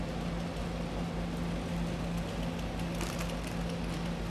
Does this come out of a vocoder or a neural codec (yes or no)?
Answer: no